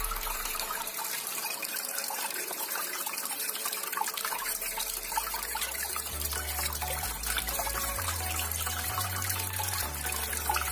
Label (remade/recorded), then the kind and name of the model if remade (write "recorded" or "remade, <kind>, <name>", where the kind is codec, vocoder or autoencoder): remade, vocoder, BigVGAN v2